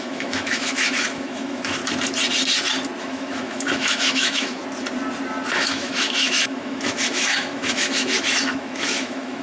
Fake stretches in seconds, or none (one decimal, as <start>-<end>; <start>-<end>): 0.0-1.8; 3.0-4.6; 5.5-9.4

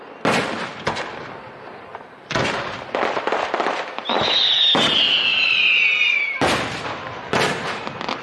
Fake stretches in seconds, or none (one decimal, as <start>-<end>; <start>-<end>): 5.3-6.8